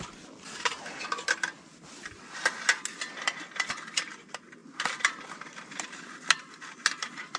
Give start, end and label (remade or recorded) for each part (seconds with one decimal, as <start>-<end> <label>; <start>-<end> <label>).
0.0-7.4 recorded